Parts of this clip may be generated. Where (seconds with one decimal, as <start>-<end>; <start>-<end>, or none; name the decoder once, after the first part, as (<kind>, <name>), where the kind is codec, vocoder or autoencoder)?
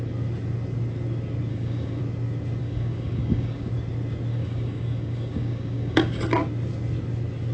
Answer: 1.5-2.0 (codec, DAC); 2.6-3.7; 4.3-6.2